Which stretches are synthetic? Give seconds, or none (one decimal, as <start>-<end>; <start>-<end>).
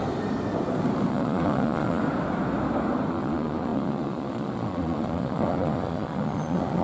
1.1-2.0; 3.1-6.8